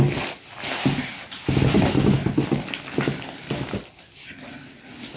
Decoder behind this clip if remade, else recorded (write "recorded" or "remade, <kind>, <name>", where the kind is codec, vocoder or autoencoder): recorded